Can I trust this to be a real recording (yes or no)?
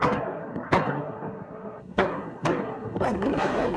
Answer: no